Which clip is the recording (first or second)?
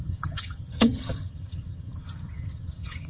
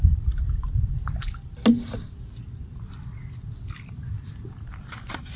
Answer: second